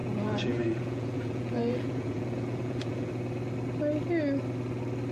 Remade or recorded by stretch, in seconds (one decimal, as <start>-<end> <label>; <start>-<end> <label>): 0.0-3.1 remade; 3.1-5.1 recorded